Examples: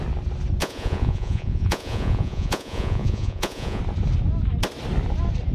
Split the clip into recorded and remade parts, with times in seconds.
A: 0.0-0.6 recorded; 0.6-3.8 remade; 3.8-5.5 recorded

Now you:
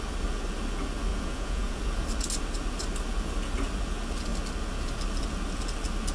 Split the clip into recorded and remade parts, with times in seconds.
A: 0.0-1.1 recorded; 1.1-1.8 remade; 1.8-6.1 recorded

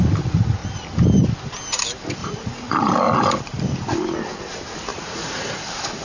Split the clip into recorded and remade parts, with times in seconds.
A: 0.0-2.2 recorded; 2.2-2.8 remade; 2.8-4.9 recorded; 4.9-5.6 remade; 5.6-6.0 recorded

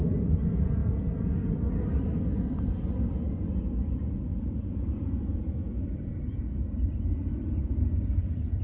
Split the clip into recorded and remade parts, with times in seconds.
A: 0.0-4.3 recorded; 4.3-6.2 remade; 6.2-8.6 recorded

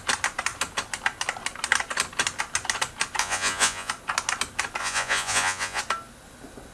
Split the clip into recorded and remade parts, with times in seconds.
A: 0.0-3.2 recorded; 3.2-3.9 remade; 3.9-4.8 recorded; 4.8-5.8 remade; 5.8-6.7 recorded